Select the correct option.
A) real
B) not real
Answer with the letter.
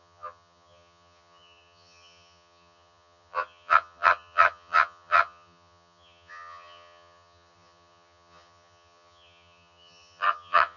B